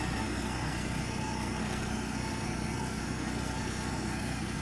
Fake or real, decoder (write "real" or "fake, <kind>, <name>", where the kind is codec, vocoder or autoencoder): fake, codec, SNAC